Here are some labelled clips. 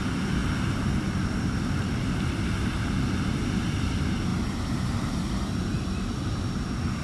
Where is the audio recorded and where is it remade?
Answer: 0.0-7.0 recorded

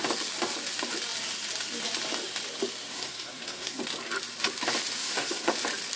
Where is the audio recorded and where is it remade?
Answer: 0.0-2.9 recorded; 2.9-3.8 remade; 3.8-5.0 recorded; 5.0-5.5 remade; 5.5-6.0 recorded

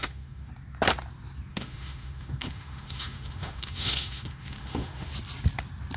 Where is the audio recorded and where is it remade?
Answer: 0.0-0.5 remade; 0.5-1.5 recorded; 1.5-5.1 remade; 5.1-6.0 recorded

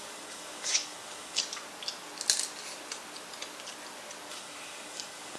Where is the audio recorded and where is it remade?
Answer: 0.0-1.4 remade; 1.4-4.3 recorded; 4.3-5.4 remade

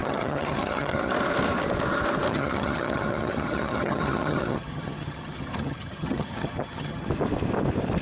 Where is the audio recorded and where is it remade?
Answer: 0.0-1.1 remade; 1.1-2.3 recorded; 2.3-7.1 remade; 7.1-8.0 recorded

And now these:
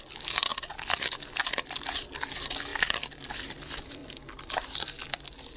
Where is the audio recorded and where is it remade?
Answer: 0.0-0.5 remade; 0.5-1.4 recorded; 1.4-4.0 remade; 4.0-5.0 recorded; 5.0-5.6 remade